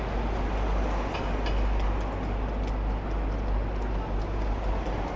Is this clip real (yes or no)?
yes